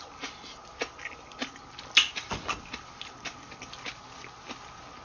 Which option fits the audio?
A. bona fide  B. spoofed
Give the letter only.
A